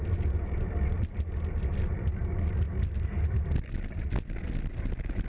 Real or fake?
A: real